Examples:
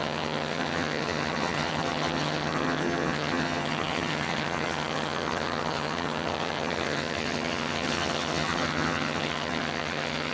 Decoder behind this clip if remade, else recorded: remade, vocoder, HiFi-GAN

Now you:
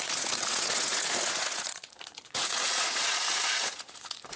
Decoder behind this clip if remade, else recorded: remade, vocoder, Vocos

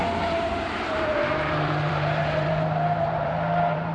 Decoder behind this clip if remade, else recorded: remade, vocoder, BigVGAN v2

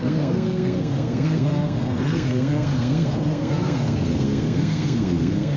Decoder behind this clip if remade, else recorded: remade, codec, SNAC